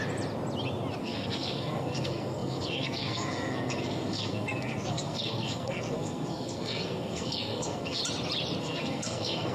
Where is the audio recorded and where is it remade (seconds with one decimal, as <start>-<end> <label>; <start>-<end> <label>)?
0.0-1.0 recorded; 1.0-8.0 remade; 8.0-8.6 recorded; 8.6-9.5 remade